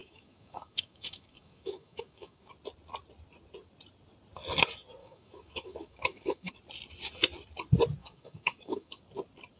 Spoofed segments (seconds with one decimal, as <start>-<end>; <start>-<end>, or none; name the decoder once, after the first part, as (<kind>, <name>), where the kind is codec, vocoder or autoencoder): 0.0-2.5 (autoencoder, DAC-VAE); 5.0-6.5; 8.0-9.0